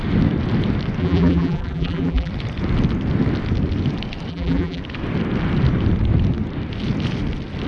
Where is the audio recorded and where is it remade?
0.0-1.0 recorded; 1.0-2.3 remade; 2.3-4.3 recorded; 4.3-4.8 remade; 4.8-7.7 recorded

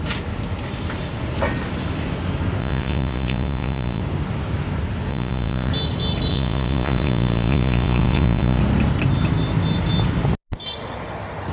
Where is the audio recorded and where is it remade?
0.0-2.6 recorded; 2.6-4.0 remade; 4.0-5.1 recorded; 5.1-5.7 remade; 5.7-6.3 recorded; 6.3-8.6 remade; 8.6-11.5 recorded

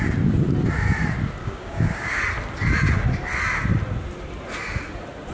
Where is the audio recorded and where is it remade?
0.0-1.4 recorded; 1.4-2.2 remade; 2.2-5.3 recorded